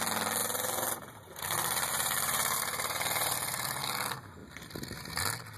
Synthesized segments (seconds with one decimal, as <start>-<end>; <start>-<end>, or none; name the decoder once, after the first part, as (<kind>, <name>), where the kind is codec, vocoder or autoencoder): 0.4-3.8 (vocoder, BigVGAN v2)